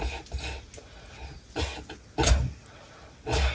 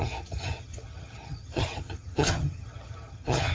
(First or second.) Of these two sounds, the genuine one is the first